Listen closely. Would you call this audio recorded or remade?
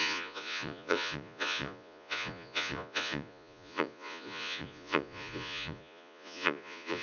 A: remade